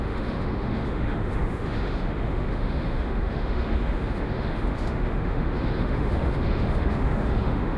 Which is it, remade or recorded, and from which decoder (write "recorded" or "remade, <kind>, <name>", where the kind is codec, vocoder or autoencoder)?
remade, autoencoder, DAC-VAE